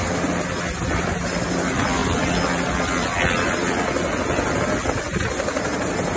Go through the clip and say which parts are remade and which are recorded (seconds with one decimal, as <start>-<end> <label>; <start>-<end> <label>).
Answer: 0.0-6.2 recorded